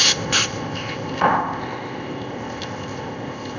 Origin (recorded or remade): remade